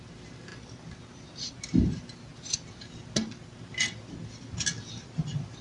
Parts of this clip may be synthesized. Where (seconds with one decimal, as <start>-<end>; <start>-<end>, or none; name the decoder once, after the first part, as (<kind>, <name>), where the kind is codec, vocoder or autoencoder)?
none